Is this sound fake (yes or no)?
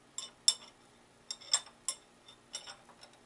no